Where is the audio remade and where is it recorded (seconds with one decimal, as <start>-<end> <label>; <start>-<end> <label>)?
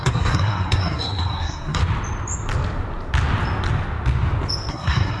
0.0-1.8 remade; 1.8-4.7 recorded; 4.7-5.2 remade